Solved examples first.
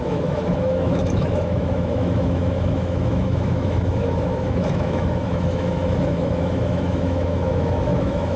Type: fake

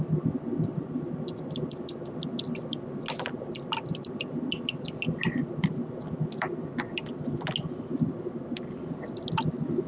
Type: real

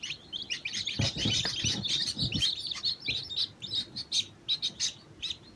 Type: real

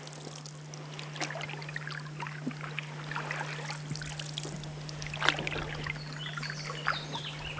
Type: real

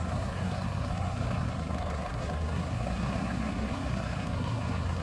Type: fake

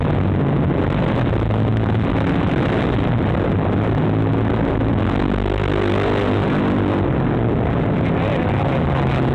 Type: real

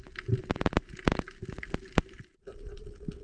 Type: real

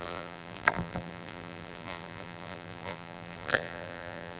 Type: fake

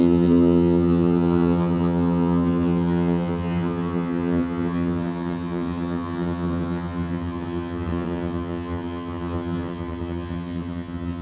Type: fake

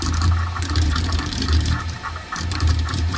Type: fake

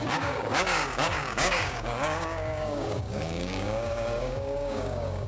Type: fake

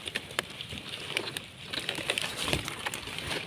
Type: fake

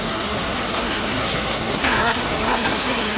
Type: fake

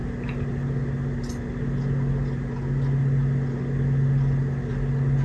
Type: real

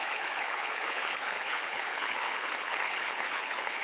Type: fake